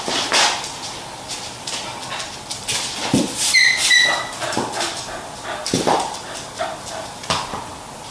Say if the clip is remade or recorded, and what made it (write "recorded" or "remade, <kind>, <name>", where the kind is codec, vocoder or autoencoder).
recorded